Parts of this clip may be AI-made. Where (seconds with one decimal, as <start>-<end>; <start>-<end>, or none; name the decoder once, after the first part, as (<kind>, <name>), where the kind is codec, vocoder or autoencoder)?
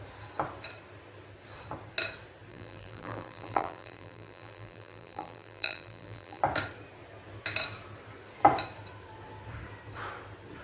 2.5-6.4 (vocoder, BigVGAN v2)